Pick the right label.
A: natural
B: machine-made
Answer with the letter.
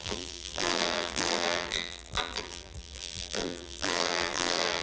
B